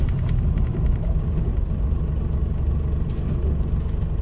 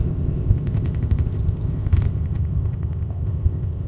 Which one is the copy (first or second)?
second